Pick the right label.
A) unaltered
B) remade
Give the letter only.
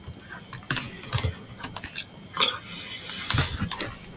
A